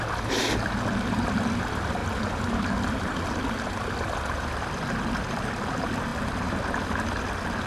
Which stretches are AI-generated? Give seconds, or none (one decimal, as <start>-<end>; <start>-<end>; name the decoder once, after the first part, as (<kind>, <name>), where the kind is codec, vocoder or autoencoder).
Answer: none